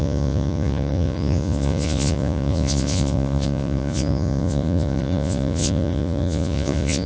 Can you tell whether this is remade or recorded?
remade